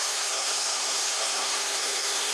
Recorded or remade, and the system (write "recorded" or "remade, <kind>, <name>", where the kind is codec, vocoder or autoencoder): remade, codec, SNAC